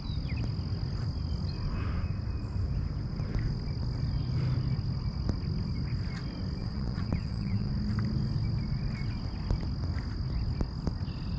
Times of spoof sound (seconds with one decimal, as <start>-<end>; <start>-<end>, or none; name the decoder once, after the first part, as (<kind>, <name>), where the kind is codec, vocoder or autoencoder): 6.6-7.7 (vocoder, WaveNeXt)